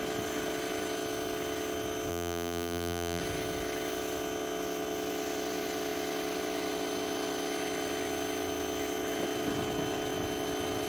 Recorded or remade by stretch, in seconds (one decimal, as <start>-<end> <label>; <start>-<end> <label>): 0.0-2.1 recorded; 2.1-3.2 remade; 3.2-10.9 recorded